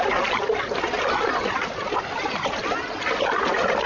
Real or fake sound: fake